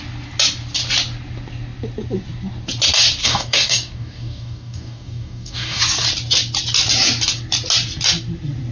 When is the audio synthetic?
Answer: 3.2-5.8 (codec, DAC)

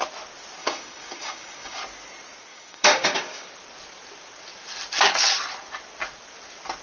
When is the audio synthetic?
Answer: 0.6-1.8 (codec, DAC); 2.5-3.5

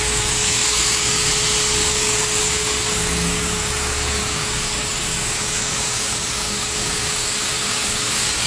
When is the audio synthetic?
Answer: 0.0-1.2 (codec, DAC); 1.8-8.5

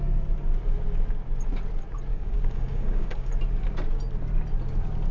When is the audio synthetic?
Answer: 2.1-3.3 (codec, DAC)

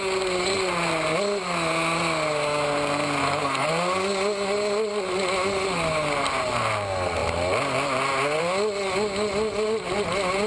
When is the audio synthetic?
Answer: 3.2-3.7 (codec, DAC)

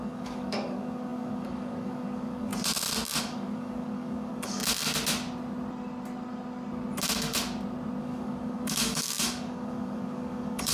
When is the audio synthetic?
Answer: 0.0-2.5 (codec, DAC); 3.2-4.6; 8.0-10.7